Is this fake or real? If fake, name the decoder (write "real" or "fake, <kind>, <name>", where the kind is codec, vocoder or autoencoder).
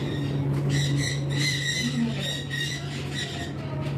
real